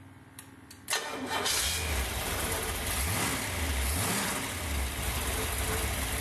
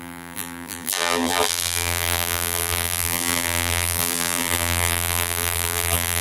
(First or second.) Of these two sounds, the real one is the first